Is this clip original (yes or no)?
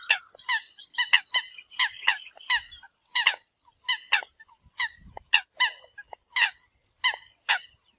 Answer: yes